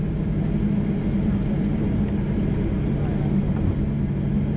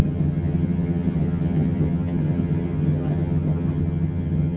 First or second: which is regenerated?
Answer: second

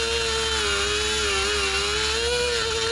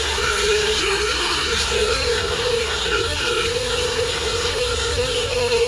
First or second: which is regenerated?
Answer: second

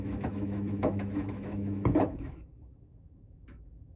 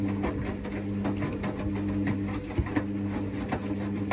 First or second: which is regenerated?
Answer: first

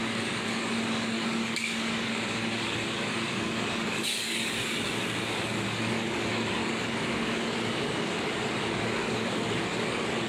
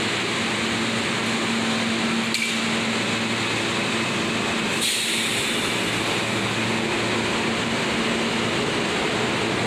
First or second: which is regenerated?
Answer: first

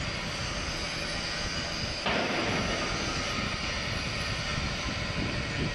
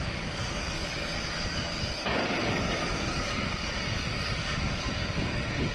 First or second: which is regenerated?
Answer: second